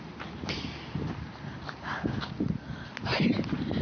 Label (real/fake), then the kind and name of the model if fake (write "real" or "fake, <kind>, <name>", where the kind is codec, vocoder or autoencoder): real